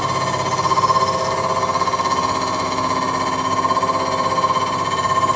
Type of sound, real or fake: real